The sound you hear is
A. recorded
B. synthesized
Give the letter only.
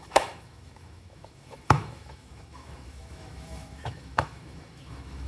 B